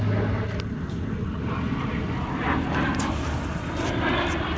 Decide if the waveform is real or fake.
real